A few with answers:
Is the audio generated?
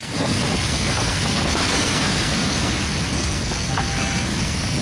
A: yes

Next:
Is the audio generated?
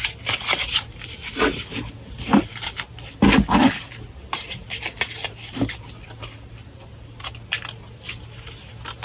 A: no